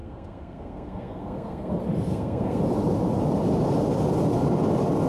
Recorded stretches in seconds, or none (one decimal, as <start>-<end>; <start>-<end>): 1.7-2.1; 2.6-5.1